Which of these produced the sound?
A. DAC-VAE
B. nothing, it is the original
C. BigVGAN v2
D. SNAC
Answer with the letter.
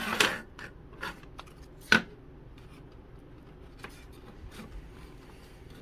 B